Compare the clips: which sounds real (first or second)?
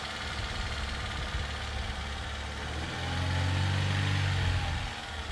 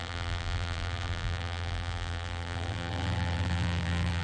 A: first